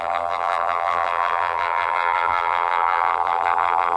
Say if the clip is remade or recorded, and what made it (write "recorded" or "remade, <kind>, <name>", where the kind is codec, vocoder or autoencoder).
remade, vocoder, BigVGAN v2